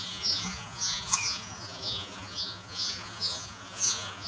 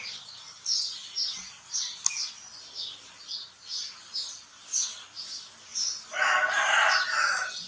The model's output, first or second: first